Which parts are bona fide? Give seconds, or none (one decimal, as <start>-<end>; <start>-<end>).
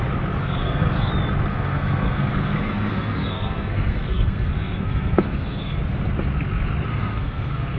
0.0-0.4; 1.1-1.5; 5.8-6.9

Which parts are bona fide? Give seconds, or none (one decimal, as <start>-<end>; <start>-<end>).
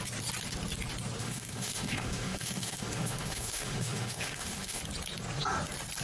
0.0-1.2; 4.8-6.0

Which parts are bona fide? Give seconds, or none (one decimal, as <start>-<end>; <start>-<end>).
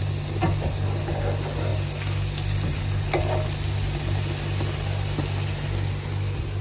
0.0-6.6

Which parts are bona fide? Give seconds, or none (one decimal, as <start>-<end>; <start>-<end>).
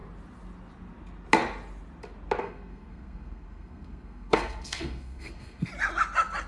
0.0-2.4; 5.7-6.5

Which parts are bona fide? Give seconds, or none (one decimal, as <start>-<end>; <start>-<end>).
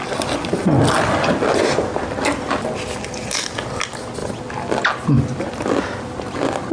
0.0-6.7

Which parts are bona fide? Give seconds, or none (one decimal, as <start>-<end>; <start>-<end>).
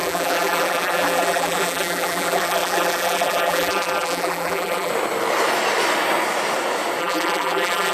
4.9-7.0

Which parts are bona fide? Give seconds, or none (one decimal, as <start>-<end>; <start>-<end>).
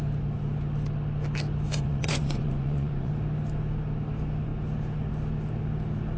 0.0-1.8; 3.1-6.2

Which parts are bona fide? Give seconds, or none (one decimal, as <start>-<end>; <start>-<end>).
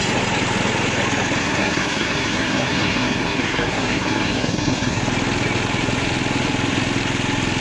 0.0-1.4; 5.0-7.6